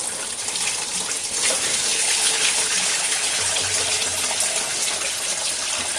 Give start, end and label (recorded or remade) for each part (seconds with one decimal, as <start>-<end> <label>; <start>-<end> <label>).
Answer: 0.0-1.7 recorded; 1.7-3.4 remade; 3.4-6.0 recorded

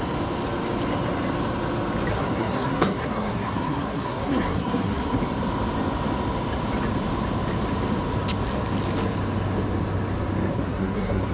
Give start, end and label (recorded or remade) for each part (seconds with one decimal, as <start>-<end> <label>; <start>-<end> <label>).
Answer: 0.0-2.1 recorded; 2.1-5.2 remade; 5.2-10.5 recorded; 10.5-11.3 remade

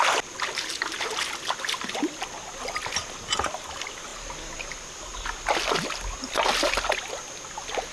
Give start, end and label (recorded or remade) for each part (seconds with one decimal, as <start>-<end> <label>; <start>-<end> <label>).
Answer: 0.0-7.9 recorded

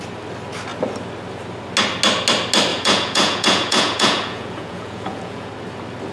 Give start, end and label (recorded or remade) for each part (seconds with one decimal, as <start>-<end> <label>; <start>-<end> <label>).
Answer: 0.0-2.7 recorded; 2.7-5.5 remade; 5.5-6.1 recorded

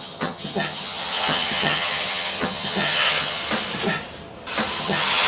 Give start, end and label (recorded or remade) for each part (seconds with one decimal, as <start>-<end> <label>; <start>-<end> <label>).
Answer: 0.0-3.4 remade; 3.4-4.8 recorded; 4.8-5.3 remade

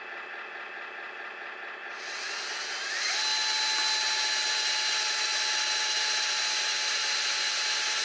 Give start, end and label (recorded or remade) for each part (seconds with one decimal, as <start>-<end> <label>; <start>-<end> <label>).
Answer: 0.0-8.0 recorded